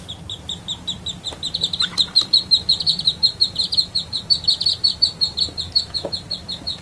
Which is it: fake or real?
fake